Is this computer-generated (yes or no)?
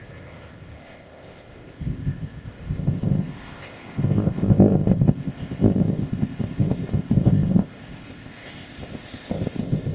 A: yes